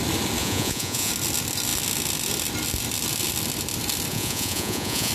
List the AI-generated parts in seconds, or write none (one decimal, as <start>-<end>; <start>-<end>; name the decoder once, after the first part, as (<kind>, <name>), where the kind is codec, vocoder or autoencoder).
0.4-1.1 (vocoder, Vocos); 4.1-5.1